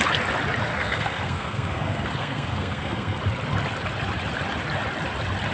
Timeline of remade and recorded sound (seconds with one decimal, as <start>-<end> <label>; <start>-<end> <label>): 0.0-0.7 recorded; 0.7-3.2 remade; 3.2-5.5 recorded